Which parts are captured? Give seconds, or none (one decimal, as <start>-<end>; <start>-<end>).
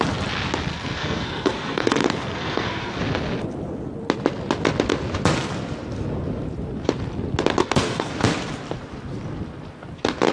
0.0-0.7; 3.0-7.6; 8.1-10.3